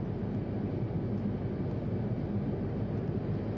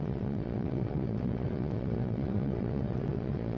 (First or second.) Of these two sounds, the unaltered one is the first